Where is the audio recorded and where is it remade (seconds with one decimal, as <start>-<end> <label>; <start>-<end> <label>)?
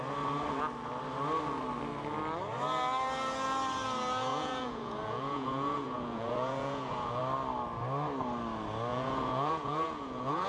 0.0-4.3 recorded; 4.3-7.2 remade; 7.2-8.9 recorded; 8.9-10.5 remade